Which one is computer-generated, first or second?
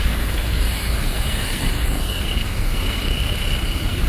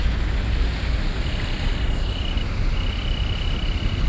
first